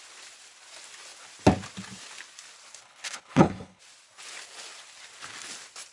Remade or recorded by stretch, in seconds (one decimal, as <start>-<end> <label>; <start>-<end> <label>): 0.0-2.8 recorded; 2.8-3.8 remade; 3.8-5.9 recorded